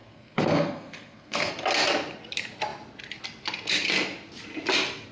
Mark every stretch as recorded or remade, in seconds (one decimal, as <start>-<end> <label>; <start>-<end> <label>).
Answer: 0.0-1.5 remade; 1.5-5.1 recorded